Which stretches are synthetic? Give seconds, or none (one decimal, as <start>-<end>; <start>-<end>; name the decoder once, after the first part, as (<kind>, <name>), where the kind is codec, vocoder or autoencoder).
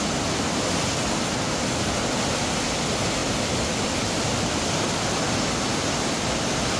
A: none